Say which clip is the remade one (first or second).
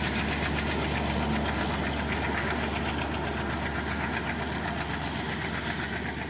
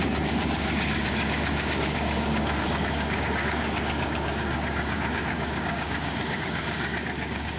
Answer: second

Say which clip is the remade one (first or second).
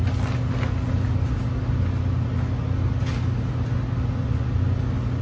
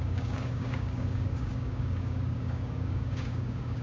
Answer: second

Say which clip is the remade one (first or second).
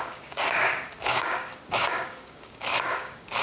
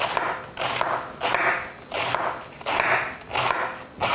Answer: first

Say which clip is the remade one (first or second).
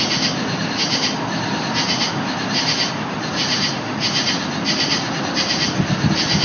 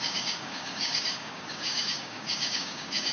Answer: second